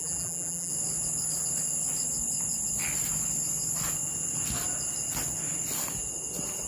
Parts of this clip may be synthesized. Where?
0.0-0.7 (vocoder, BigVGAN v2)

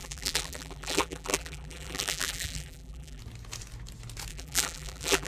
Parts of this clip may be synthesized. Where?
0.0-3.2 (vocoder, BigVGAN v2); 4.3-5.3

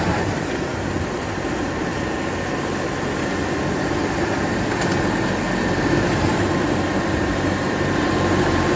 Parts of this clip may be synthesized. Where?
0.0-1.9 (vocoder, BigVGAN v2); 6.0-8.8

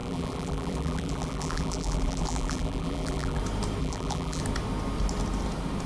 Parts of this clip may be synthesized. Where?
0.0-3.4 (vocoder, BigVGAN v2); 3.8-4.4

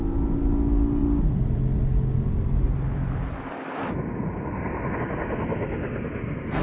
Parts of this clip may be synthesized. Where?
1.0-5.0 (vocoder, BigVGAN v2)

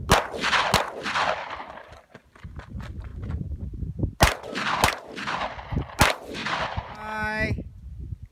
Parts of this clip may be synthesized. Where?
none